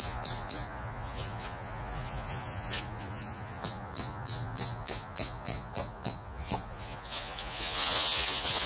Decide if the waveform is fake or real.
fake